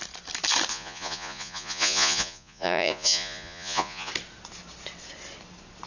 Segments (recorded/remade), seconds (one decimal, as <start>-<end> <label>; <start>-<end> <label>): 0.0-0.7 recorded; 0.7-4.1 remade; 4.1-5.9 recorded